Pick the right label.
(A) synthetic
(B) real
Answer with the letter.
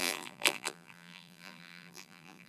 A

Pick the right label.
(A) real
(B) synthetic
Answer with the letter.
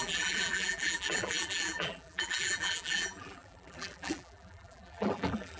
B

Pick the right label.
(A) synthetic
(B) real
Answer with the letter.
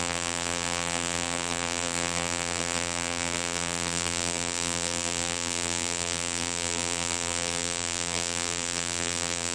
A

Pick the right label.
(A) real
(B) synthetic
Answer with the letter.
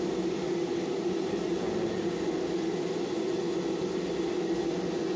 A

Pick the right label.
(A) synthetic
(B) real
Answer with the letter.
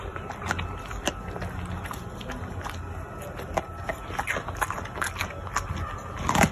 B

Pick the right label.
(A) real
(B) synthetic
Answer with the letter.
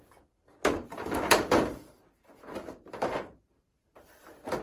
B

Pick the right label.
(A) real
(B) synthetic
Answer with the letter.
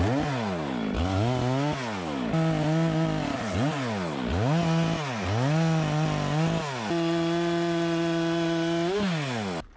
A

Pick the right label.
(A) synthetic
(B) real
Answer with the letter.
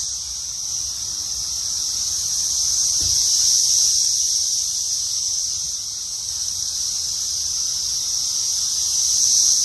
B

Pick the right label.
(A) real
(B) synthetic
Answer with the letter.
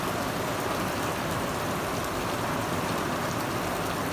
A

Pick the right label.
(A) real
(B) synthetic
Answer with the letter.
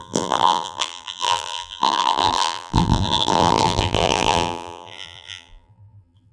B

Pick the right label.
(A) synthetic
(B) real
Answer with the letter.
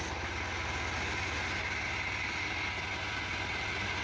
B